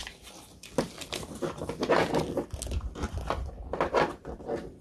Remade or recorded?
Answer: recorded